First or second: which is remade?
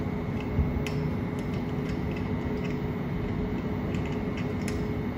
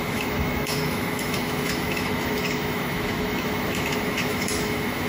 second